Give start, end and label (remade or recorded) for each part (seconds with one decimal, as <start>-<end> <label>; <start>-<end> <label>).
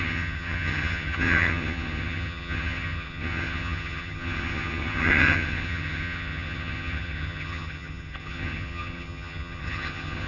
0.0-10.3 remade